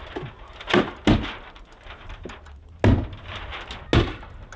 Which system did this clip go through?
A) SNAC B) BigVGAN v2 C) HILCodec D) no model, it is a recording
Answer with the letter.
D